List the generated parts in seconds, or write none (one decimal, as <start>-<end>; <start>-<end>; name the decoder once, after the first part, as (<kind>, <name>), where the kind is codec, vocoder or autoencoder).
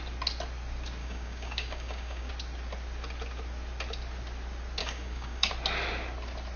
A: 1.0-2.3 (codec, DAC); 4.8-5.5